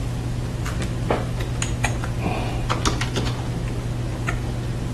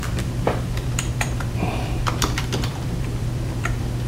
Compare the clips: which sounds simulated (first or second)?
second